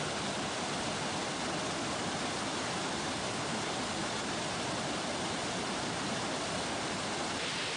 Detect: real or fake real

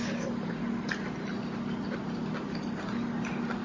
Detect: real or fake real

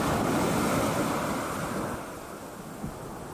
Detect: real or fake real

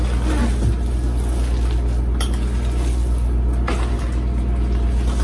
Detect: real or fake real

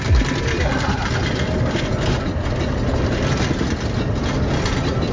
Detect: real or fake real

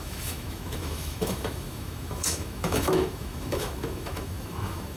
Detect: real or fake fake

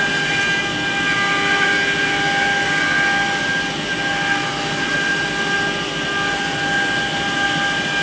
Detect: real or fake real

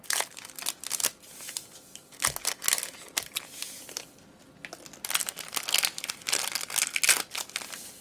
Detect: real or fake real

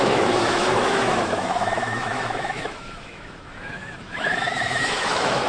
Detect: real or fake fake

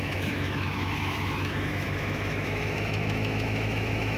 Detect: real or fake fake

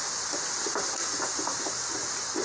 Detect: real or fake real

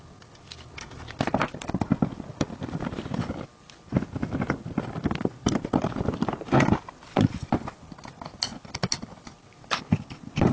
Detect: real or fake real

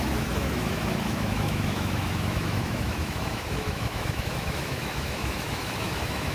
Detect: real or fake fake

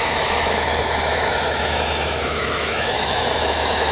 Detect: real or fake fake